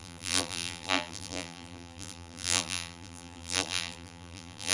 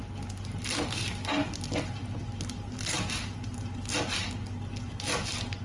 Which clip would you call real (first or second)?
second